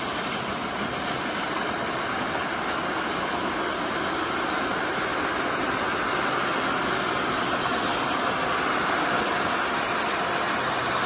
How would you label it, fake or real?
real